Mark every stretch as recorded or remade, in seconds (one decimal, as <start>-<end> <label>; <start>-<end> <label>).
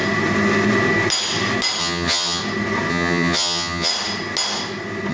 0.0-1.8 recorded; 1.8-2.4 remade; 2.4-2.9 recorded; 2.9-3.9 remade; 3.9-5.1 recorded